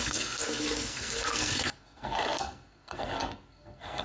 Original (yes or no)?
no